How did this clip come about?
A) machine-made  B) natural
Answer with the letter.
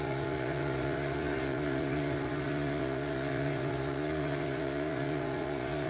A